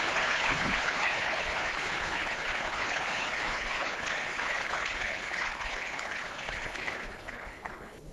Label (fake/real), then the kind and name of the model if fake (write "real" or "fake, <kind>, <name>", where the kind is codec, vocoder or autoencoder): fake, codec, HILCodec